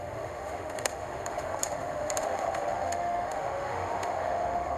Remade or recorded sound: remade